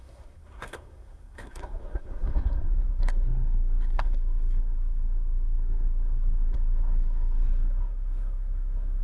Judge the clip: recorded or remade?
remade